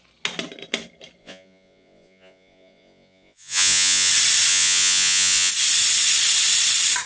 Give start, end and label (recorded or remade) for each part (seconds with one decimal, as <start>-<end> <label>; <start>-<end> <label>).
0.0-1.2 recorded; 1.2-4.1 remade; 4.1-4.5 recorded; 4.5-5.5 remade; 5.5-7.1 recorded